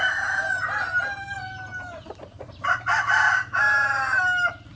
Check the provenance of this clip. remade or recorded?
recorded